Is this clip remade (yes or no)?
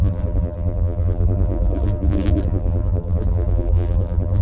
yes